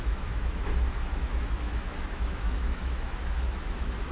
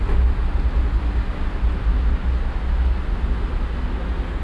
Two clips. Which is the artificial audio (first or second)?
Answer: first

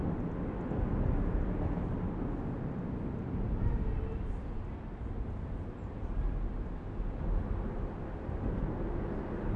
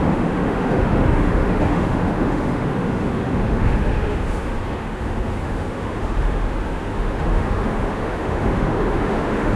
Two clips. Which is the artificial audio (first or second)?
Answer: second